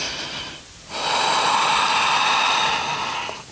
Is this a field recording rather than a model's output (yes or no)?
yes